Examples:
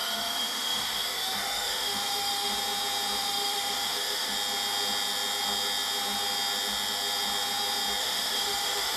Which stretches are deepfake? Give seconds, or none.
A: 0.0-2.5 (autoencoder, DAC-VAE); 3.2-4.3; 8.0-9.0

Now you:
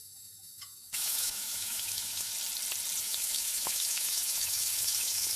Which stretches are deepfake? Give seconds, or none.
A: 0.0-2.3 (autoencoder, DAC-VAE); 3.0-5.4

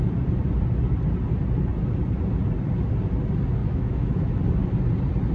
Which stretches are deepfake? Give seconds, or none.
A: 3.6-4.3 (autoencoder, DAC-VAE)